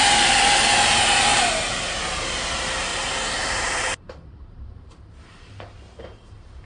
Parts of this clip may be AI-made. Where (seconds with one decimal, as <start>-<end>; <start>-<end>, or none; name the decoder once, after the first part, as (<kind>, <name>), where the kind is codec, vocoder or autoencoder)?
2.9-5.5 (vocoder, BigVGAN v2)